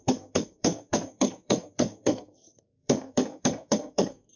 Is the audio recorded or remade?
remade